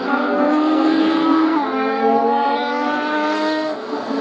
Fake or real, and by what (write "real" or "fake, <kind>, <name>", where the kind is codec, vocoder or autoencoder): fake, codec, SNAC